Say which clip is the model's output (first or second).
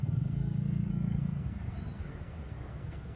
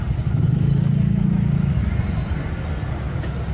first